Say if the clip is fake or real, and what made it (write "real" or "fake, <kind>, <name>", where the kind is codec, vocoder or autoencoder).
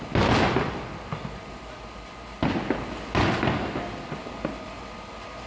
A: real